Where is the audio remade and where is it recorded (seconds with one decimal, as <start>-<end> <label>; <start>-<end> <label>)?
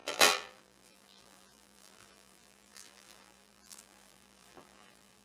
0.0-5.2 remade